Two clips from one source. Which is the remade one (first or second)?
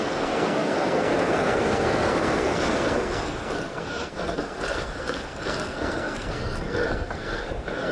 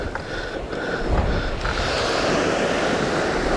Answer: first